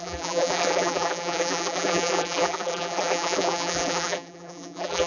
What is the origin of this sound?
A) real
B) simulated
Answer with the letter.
B